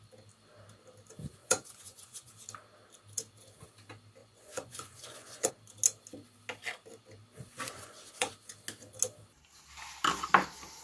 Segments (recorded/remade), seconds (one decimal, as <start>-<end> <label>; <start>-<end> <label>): 0.0-1.4 recorded; 1.4-2.3 remade; 2.3-4.2 recorded; 4.2-5.5 remade; 5.5-7.5 recorded; 7.5-8.3 remade; 8.3-10.8 recorded

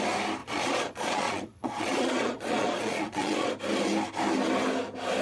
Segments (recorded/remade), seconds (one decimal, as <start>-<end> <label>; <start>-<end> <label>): 0.0-0.4 recorded; 0.4-3.5 remade; 3.5-5.2 recorded